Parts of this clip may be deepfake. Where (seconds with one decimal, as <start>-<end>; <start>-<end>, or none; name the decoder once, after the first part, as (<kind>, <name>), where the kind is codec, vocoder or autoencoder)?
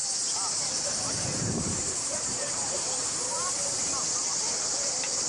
0.5-5.3 (vocoder, BigVGAN v2)